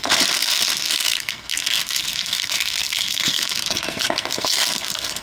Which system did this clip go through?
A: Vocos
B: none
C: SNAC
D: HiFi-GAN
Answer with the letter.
C